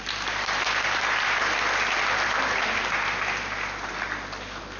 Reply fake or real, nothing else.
real